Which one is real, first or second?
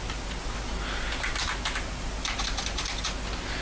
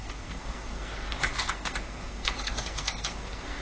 first